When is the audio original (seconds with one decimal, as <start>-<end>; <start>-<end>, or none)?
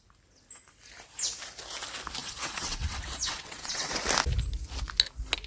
0.0-2.2; 3.9-5.5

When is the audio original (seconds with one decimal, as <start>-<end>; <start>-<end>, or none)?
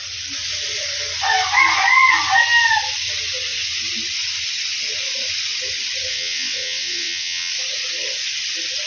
0.0-6.1; 7.5-8.9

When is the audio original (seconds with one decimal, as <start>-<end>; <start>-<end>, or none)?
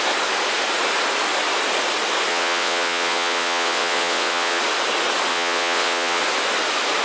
0.0-2.3; 4.6-5.3; 6.2-7.0